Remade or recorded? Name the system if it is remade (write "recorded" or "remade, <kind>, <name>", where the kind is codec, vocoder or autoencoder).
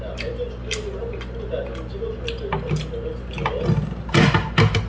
recorded